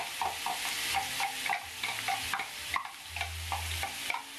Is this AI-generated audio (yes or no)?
no